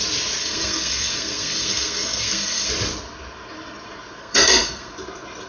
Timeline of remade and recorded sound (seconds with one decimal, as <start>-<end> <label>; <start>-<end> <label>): 0.0-0.4 recorded; 0.4-2.7 remade; 2.7-4.2 recorded; 4.2-4.9 remade; 4.9-5.5 recorded